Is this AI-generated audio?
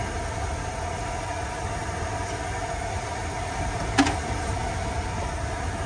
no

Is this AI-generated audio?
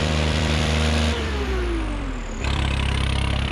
yes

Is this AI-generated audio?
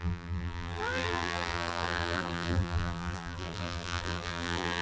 yes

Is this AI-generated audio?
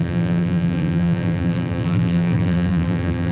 yes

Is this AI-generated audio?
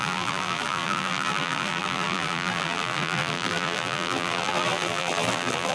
yes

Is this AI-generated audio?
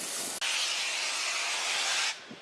no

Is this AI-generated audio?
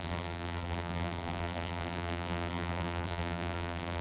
yes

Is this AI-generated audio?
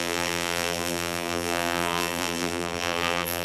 yes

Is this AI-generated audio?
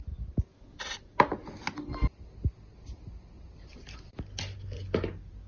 no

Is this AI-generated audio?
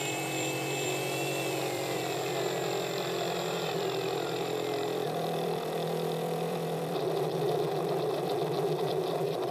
yes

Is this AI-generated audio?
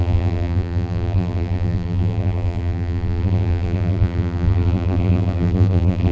yes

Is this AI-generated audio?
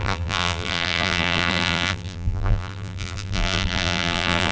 yes